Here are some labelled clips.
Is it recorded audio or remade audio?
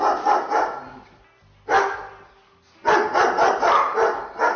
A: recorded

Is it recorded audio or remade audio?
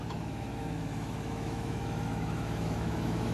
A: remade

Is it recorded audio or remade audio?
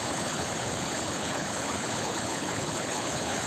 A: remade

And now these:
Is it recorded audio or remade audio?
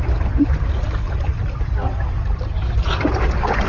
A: remade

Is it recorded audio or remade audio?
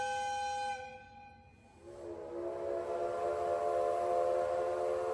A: recorded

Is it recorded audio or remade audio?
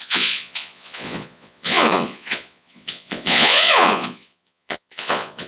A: remade